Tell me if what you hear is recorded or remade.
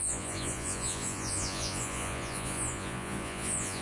remade